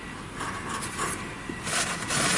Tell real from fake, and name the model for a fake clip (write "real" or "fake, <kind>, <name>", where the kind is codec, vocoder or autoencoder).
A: real